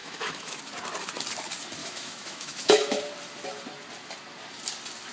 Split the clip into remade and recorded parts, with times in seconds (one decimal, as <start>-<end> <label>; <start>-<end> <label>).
0.0-0.6 remade; 0.6-1.8 recorded; 1.8-3.0 remade; 3.0-5.1 recorded

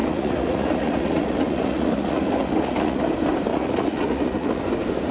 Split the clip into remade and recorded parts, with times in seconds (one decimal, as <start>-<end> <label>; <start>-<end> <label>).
0.0-3.1 remade; 3.1-3.5 recorded; 3.5-4.6 remade; 4.6-5.1 recorded